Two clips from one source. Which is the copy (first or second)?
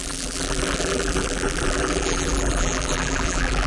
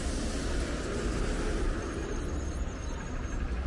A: first